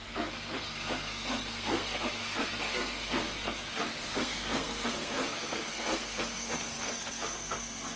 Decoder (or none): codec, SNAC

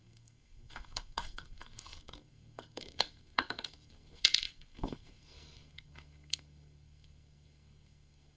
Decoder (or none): codec, SNAC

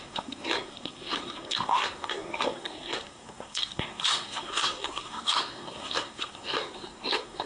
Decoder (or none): codec, SNAC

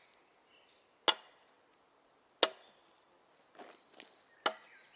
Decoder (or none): none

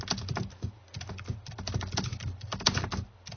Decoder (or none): none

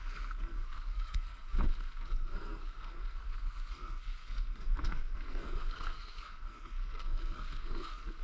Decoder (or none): codec, SNAC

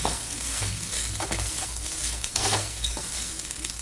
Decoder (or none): codec, SNAC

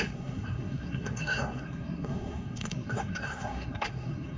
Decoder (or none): codec, SNAC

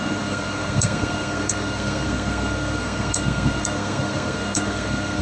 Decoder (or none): codec, SNAC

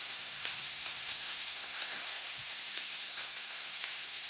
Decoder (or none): codec, SNAC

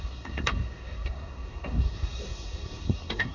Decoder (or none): codec, SNAC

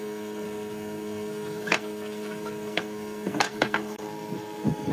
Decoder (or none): codec, SNAC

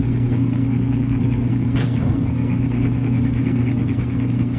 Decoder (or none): codec, SNAC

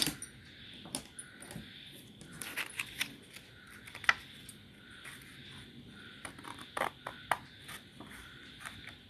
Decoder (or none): none